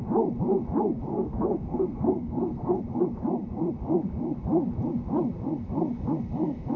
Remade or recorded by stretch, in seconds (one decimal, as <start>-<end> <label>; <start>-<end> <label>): 0.0-1.1 recorded; 1.1-2.8 remade; 2.8-6.8 recorded